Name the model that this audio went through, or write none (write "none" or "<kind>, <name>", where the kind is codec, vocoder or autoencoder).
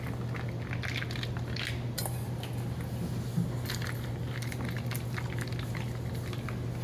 none